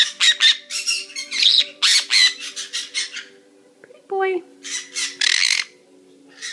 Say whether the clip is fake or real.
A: real